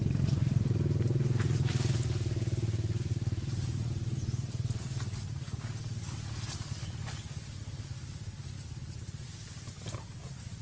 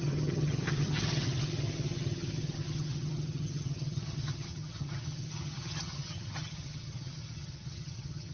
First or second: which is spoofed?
second